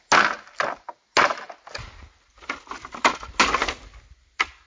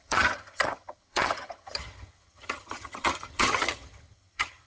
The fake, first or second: second